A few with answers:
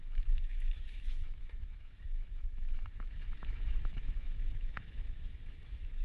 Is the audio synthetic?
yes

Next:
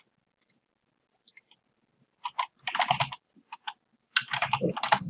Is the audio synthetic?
no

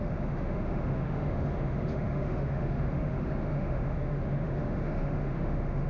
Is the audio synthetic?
yes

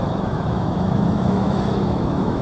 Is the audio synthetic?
yes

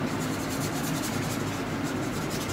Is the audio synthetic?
no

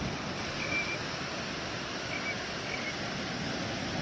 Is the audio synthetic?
no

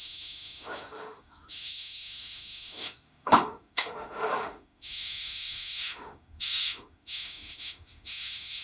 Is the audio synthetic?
yes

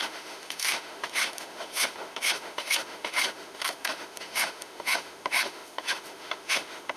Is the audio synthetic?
yes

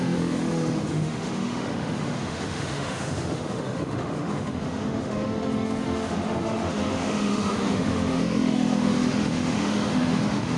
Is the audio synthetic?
yes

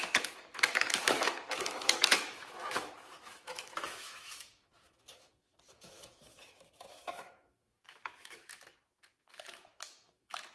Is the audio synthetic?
yes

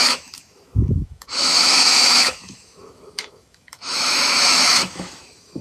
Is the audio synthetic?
yes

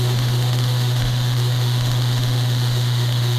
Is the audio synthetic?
yes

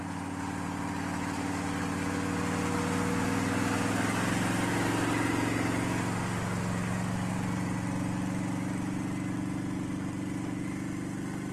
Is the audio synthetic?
no